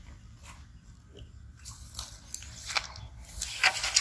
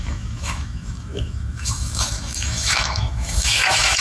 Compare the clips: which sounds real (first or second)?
first